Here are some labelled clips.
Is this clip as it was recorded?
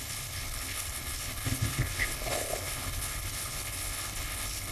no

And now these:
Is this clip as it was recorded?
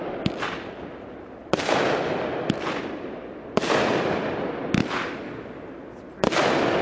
yes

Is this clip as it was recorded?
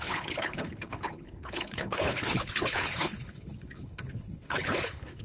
no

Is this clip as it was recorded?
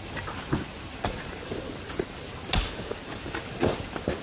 yes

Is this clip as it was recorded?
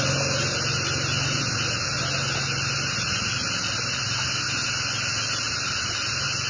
yes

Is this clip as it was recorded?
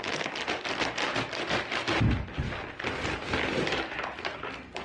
yes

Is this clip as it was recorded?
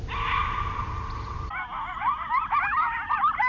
yes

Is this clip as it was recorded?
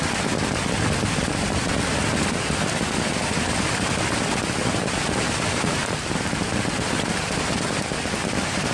yes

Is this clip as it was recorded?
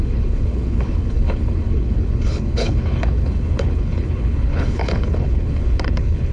no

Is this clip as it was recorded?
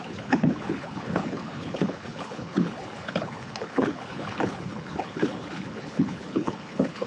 no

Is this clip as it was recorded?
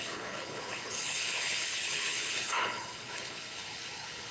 no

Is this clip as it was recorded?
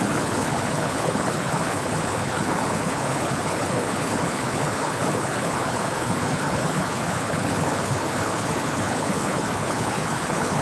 no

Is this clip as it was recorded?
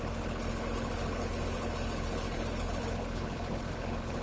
no